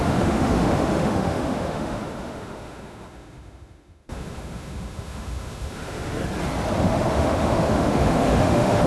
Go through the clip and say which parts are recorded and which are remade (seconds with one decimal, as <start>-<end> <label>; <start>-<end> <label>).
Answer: 0.0-6.2 remade; 6.2-6.8 recorded; 6.8-8.9 remade